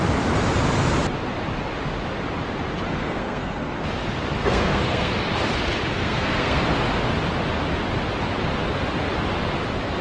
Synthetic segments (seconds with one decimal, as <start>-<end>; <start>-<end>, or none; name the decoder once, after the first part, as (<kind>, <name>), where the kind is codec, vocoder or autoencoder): 3.0-3.7 (codec, SNAC); 4.4-5.1; 5.9-6.6